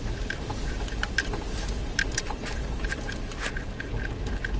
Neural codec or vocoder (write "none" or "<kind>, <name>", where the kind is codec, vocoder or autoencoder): none